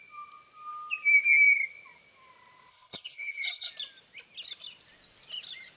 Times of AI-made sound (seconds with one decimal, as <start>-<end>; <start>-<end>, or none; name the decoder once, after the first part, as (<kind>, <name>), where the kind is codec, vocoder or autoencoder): 2.7-3.7 (codec, HILCodec)